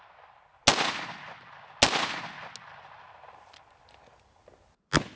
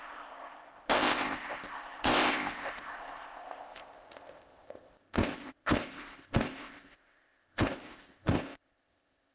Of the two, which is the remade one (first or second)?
second